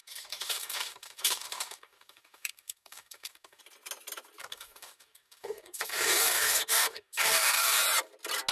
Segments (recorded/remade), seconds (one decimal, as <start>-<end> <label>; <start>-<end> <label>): 0.0-3.6 remade; 3.6-4.4 recorded; 4.4-7.8 remade; 7.8-8.5 recorded